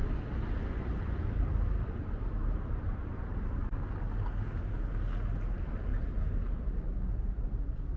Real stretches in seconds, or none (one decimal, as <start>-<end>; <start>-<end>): 1.2-5.9; 7.1-8.0